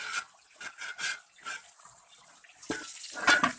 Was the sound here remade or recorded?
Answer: recorded